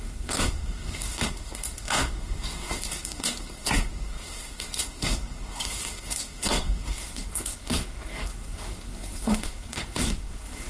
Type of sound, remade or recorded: remade